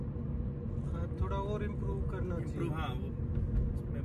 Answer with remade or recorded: recorded